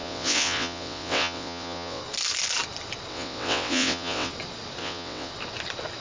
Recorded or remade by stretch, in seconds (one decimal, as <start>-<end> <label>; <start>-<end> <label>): 0.0-2.0 remade; 2.0-3.1 recorded; 3.1-4.3 remade; 4.3-4.8 recorded; 4.8-5.3 remade; 5.3-6.0 recorded